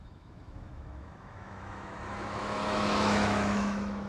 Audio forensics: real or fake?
fake